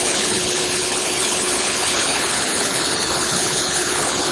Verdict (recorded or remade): remade